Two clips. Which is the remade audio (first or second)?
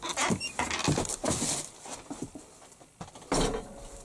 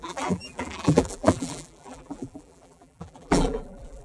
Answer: second